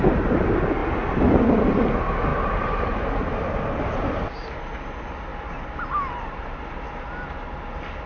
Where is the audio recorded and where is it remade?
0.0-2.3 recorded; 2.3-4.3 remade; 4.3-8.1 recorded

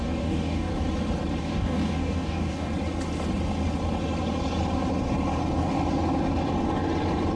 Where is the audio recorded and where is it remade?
0.0-0.7 remade; 0.7-1.4 recorded; 1.4-2.7 remade; 2.7-7.4 recorded

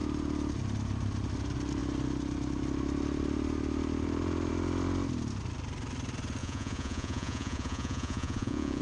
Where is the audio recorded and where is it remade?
0.0-6.4 recorded; 6.4-8.8 remade

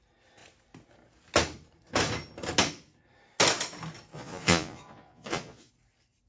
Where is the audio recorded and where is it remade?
0.0-4.1 recorded; 4.1-5.7 remade; 5.7-6.3 recorded

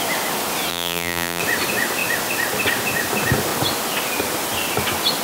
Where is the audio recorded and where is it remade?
0.0-0.7 recorded; 0.7-1.4 remade; 1.4-5.2 recorded

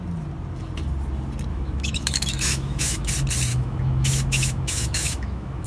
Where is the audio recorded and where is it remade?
0.0-1.5 recorded; 1.5-3.1 remade; 3.1-3.5 recorded; 3.5-5.7 remade

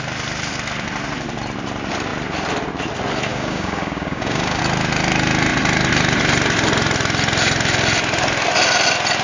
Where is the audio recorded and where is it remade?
0.0-3.3 recorded; 3.3-4.6 remade; 4.6-9.2 recorded